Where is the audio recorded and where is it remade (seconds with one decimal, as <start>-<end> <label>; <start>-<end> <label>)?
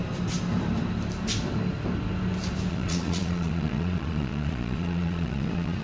0.0-2.7 recorded; 2.7-5.8 remade